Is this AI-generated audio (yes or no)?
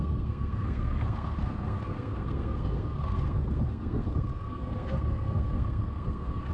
yes